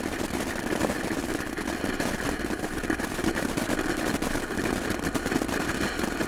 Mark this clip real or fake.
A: real